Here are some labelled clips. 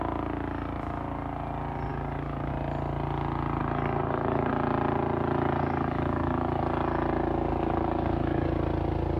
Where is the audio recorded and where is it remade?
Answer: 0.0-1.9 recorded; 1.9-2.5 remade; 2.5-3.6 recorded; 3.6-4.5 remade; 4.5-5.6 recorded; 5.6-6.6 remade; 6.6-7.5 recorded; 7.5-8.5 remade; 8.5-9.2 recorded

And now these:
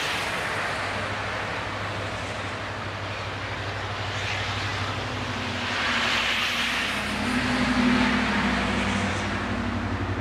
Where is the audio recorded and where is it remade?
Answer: 0.0-10.2 recorded

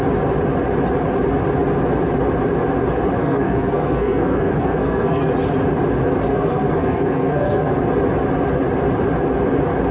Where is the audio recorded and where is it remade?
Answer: 0.0-3.2 recorded; 3.2-5.3 remade; 5.3-6.3 recorded; 6.3-7.8 remade; 7.8-9.9 recorded

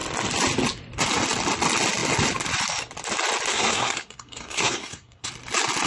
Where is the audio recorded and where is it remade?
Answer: 0.0-3.5 recorded; 3.5-5.3 remade; 5.3-5.9 recorded

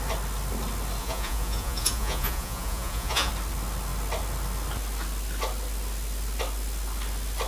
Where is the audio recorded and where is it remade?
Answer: 0.0-1.0 recorded; 1.0-3.3 remade; 3.3-7.5 recorded